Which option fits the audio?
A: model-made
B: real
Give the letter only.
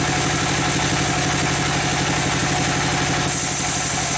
B